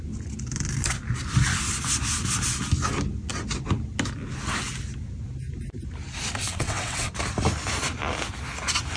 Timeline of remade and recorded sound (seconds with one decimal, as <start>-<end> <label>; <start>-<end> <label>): 0.0-6.4 recorded; 6.4-7.1 remade; 7.1-9.0 recorded